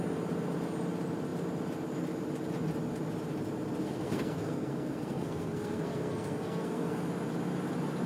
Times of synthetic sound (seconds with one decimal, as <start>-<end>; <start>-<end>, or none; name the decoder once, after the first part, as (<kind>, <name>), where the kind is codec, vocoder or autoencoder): 3.8-7.1 (codec, SNAC)

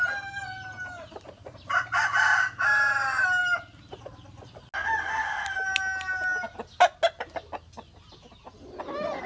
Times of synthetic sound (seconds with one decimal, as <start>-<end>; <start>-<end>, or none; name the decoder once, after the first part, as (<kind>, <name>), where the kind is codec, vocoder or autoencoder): none

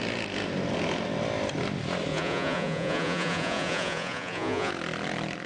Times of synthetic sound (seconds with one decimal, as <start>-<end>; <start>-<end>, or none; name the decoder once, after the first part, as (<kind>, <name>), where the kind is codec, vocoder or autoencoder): 2.1-4.7 (vocoder, Vocos)

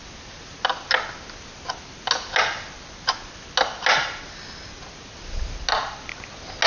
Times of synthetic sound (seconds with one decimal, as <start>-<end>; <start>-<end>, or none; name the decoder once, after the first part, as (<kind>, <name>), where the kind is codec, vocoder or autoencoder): none

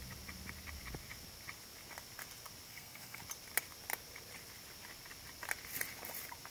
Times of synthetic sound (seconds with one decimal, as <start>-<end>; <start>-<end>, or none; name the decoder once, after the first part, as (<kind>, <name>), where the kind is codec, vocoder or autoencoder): 2.7-3.2 (codec, SNAC)